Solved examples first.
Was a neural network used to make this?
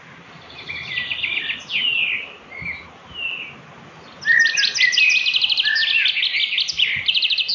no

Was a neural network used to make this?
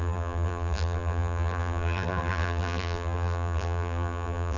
yes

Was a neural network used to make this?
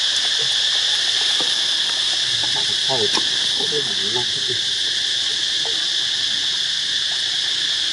no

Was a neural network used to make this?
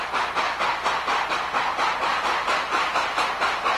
no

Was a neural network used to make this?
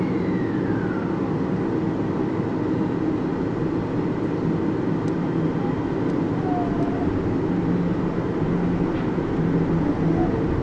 no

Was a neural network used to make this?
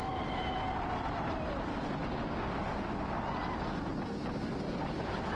no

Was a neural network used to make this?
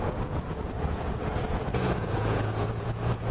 yes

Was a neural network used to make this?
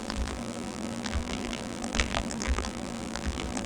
yes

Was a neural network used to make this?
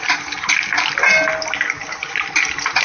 no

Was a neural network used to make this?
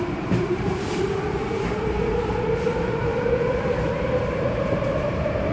yes